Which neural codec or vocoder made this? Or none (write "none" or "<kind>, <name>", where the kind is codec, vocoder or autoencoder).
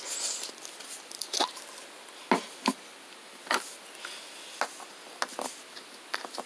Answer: none